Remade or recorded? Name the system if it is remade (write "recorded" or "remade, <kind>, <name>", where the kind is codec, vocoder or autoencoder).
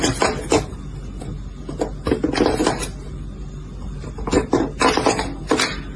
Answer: recorded